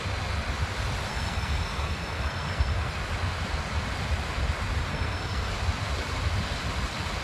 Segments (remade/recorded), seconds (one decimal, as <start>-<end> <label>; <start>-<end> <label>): 0.0-1.1 recorded; 1.1-2.9 remade; 2.9-4.9 recorded; 4.9-5.5 remade; 5.5-7.2 recorded